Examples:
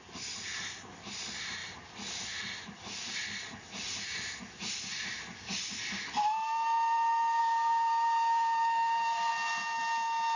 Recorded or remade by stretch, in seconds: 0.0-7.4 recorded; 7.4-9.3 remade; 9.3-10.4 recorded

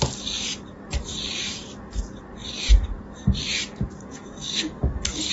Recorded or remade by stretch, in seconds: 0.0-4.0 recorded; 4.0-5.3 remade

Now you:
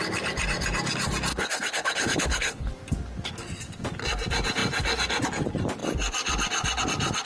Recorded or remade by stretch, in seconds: 0.0-1.3 recorded; 1.3-2.7 remade; 2.7-7.3 recorded